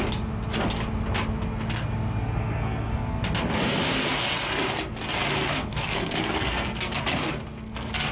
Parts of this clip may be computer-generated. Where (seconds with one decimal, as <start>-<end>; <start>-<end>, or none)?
2.2-3.2; 5.7-6.9